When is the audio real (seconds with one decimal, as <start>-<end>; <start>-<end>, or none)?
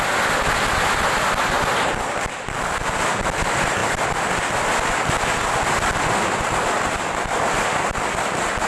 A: 0.0-8.7